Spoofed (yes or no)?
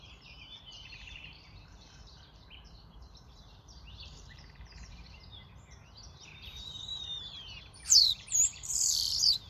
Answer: yes